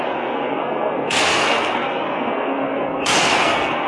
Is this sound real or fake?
fake